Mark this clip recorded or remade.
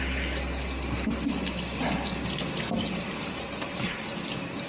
recorded